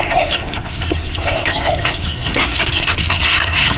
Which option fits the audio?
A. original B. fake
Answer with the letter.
B